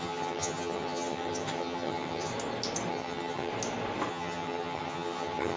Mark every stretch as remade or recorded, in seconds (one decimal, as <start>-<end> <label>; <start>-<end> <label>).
0.0-2.3 remade; 2.3-2.9 recorded; 2.9-3.5 remade; 3.5-4.1 recorded; 4.1-5.6 remade